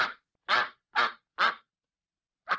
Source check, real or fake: fake